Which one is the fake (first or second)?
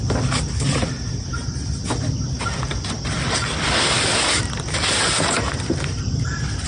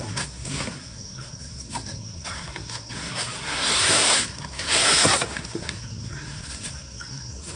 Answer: second